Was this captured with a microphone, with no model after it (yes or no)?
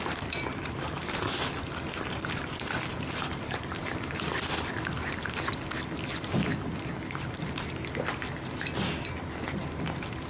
no